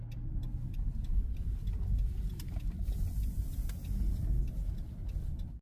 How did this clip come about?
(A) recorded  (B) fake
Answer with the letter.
A